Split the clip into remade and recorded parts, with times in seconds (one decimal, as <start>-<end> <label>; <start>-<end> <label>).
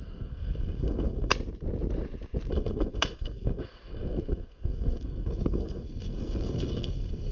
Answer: 0.0-1.3 remade; 1.3-2.5 recorded; 2.5-7.3 remade